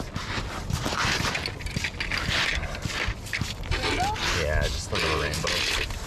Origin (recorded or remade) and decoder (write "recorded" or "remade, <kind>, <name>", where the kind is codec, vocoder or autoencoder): recorded